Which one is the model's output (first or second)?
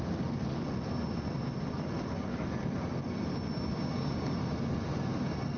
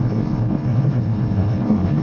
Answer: second